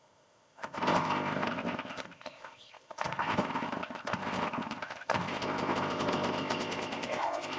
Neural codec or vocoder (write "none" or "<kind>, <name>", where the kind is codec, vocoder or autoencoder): codec, ZipCodec